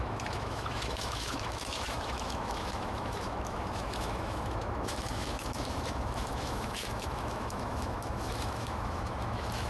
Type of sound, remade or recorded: remade